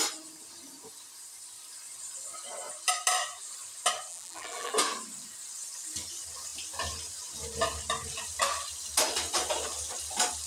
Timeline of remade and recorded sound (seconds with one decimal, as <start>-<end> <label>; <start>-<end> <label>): 0.0-4.1 recorded; 4.1-4.7 remade; 4.7-10.5 recorded